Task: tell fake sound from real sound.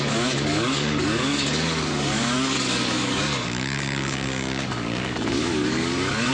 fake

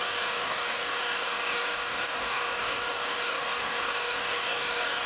fake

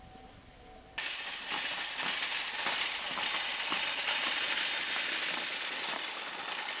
real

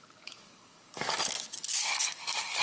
fake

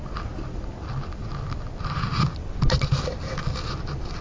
real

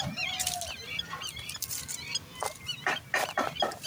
real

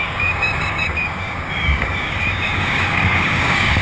fake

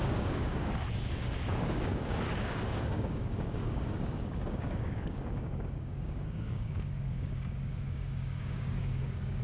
fake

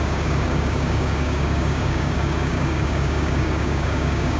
fake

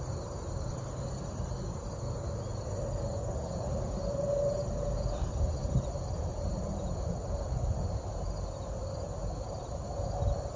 real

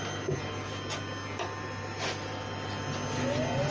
real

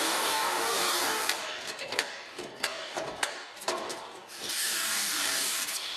fake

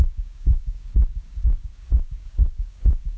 fake